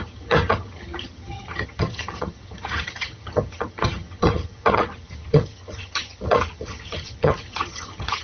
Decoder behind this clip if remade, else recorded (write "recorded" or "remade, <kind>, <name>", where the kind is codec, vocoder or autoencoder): remade, vocoder, HiFi-GAN